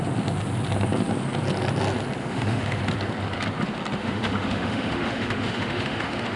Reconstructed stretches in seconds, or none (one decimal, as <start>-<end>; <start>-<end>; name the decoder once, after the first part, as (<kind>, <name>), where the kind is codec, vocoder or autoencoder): 2.2-2.8 (autoencoder, DAC-VAE); 4.0-6.4